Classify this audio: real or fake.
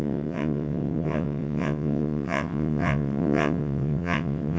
fake